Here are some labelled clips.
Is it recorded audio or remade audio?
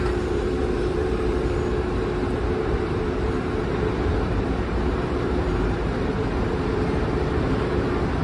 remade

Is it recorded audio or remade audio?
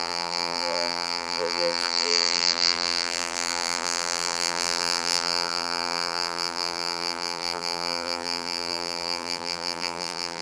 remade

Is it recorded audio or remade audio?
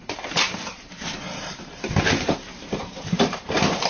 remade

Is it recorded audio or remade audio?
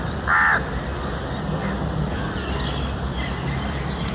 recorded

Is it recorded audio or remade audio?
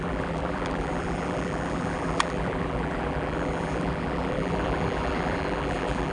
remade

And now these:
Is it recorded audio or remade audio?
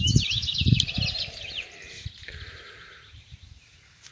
remade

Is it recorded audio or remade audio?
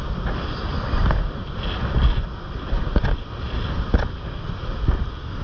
recorded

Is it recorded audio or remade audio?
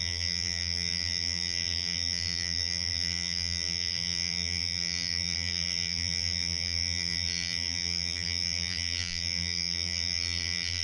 remade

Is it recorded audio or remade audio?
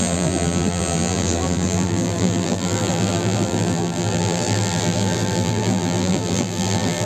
remade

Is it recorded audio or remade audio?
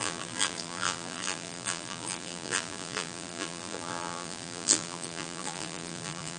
remade